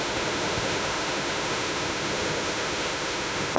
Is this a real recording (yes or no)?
no